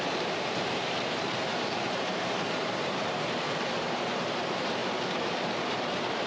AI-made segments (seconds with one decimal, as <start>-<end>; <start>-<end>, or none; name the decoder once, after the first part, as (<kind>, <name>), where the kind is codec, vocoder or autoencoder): 0.0-6.3 (vocoder, BigVGAN v2)